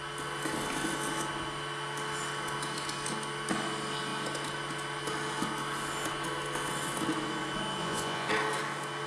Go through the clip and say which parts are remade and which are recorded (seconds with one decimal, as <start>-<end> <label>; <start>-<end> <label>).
0.0-7.8 recorded; 7.8-8.3 remade; 8.3-9.1 recorded